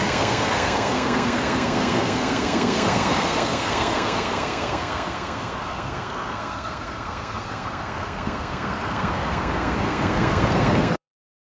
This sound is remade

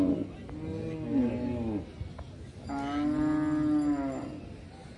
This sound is recorded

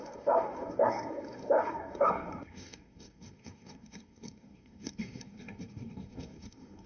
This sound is remade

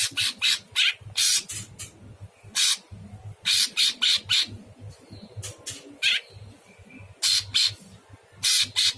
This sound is recorded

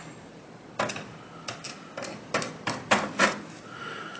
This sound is recorded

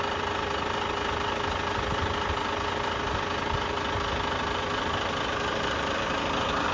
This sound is recorded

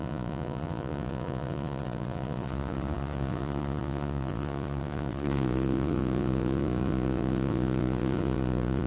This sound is remade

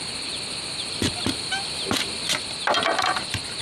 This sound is recorded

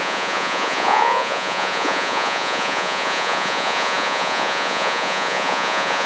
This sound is remade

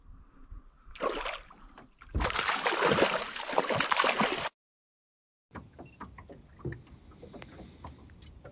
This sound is recorded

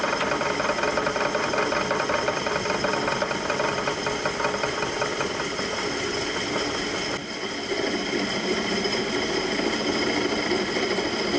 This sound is recorded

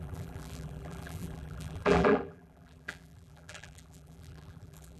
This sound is remade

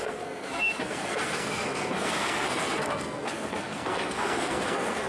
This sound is remade